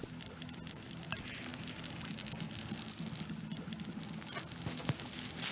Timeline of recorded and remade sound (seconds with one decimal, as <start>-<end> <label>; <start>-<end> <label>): 0.0-5.5 recorded